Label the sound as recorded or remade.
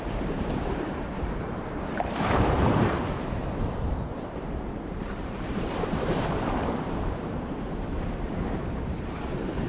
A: remade